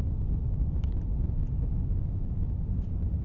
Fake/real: real